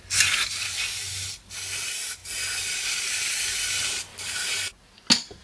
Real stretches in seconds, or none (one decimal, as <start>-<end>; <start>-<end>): 0.0-5.4